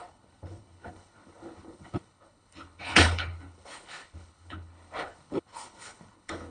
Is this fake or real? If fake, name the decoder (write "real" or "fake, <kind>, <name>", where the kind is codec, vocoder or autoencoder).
fake, codec, HILCodec